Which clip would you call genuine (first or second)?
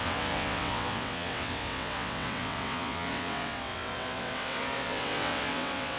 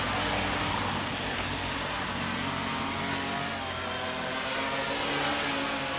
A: second